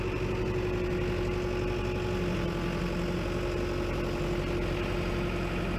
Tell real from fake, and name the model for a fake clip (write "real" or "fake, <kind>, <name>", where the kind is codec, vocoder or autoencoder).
real